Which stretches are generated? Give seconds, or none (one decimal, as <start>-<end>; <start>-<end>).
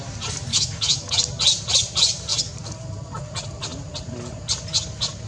0.5-1.2